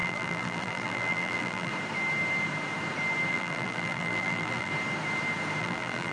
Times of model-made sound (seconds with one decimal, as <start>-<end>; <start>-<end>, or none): 0.0-1.7; 3.3-4.7; 5.6-6.1